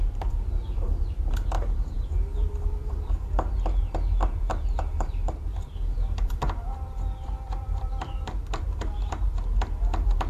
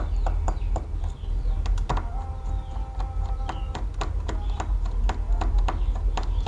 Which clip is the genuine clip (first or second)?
second